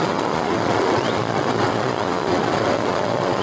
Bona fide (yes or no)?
no